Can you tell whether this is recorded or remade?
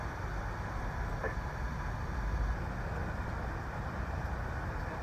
recorded